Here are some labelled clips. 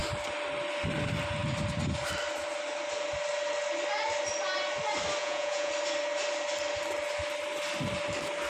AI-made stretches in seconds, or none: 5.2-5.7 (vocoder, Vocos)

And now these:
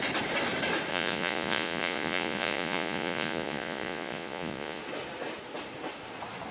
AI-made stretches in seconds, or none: 0.9-4.8 (vocoder, Vocos)